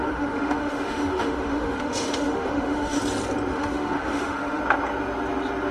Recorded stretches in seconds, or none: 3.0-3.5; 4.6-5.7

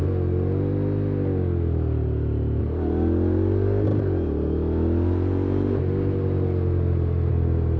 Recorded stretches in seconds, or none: 0.0-7.8

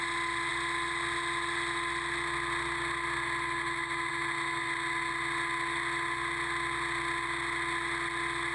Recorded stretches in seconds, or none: 0.0-8.5

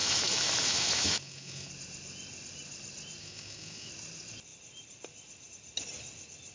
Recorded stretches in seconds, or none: 1.7-3.2; 3.9-6.5

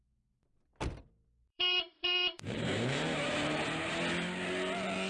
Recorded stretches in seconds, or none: 0.0-1.5; 3.6-5.1